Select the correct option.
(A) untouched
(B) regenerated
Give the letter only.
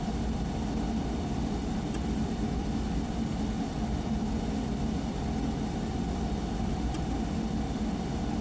A